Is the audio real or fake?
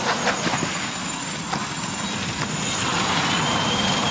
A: real